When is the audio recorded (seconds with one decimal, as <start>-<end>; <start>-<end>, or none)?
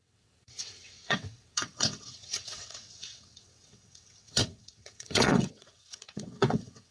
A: none